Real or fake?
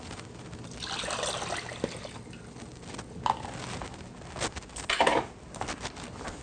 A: real